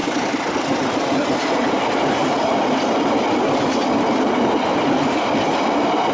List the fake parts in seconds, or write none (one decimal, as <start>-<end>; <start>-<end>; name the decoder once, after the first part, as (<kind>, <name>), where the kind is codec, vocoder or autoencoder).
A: none